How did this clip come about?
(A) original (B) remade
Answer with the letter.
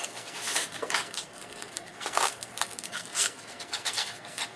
B